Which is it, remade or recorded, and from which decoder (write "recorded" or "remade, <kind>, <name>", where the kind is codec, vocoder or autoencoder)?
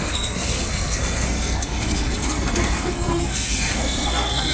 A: remade, codec, SNAC